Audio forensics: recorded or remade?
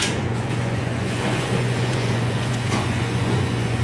remade